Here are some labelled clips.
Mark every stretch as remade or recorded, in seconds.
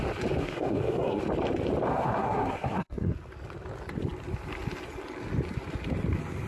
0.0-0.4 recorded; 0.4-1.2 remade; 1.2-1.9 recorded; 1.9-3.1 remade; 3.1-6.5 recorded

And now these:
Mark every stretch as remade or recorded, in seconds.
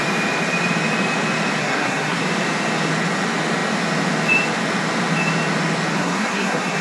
0.0-1.6 recorded; 1.6-2.2 remade; 2.2-5.9 recorded; 5.9-6.8 remade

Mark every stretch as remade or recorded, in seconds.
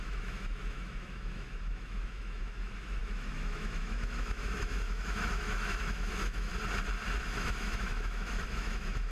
0.0-6.5 remade; 6.5-7.2 recorded; 7.2-9.1 remade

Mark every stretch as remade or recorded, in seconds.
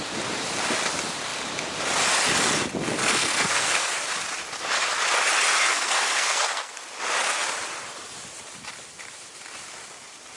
0.0-3.0 recorded; 3.0-3.9 remade; 3.9-5.7 recorded; 5.7-6.8 remade; 6.8-10.4 recorded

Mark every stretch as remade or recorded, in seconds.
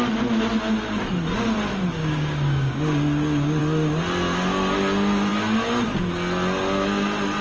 0.0-2.0 recorded; 2.0-3.6 remade; 3.6-7.4 recorded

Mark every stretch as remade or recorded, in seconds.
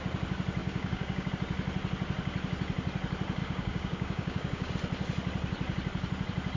0.0-0.6 recorded; 0.6-1.3 remade; 1.3-3.4 recorded; 3.4-4.7 remade; 4.7-6.6 recorded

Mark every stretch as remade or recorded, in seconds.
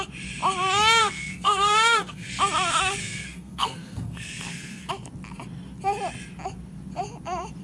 0.0-1.0 recorded; 1.0-2.4 remade; 2.4-3.0 recorded; 3.0-4.9 remade; 4.9-7.6 recorded